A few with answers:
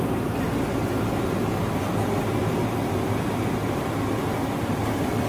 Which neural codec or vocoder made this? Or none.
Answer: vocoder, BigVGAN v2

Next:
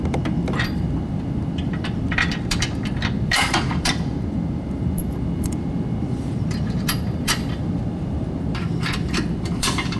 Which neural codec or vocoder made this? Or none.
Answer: vocoder, BigVGAN v2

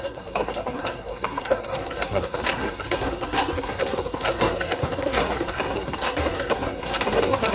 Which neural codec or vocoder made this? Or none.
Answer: codec, SNAC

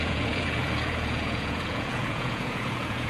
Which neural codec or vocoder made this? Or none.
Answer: vocoder, Vocos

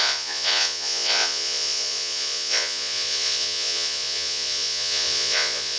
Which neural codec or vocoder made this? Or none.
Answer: vocoder, Vocos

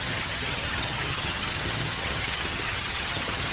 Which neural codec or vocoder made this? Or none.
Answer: vocoder, HiFi-GAN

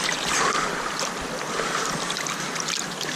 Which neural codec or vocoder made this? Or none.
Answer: vocoder, BigVGAN v2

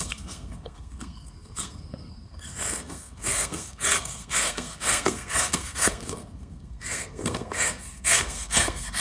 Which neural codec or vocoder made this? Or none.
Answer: codec, SNAC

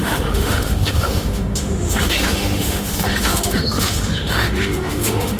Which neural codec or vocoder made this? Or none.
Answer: autoencoder, DAC-VAE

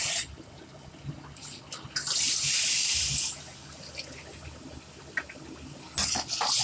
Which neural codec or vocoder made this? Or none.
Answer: none